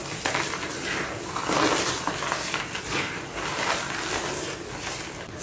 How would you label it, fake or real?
real